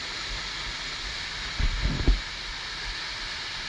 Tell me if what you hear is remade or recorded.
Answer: recorded